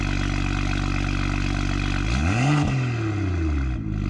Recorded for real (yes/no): yes